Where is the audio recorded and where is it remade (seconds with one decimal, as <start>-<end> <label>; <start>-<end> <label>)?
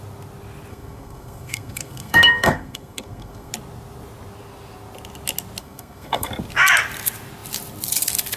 0.0-0.7 recorded; 0.7-3.5 remade; 3.5-5.6 recorded; 5.6-6.3 remade; 6.3-8.4 recorded